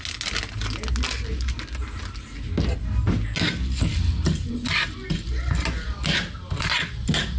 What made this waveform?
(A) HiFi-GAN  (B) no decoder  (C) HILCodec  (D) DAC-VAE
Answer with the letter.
B